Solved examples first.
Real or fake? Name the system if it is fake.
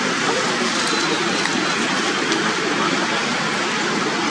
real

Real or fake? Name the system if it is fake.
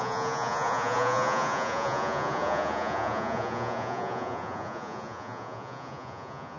fake, vocoder, Vocos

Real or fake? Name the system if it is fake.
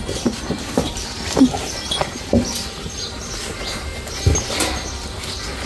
real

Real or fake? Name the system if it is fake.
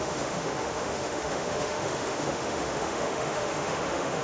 fake, autoencoder, DAC-VAE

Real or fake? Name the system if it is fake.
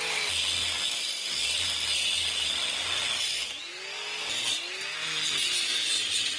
real